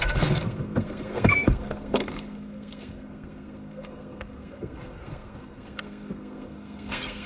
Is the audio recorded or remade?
remade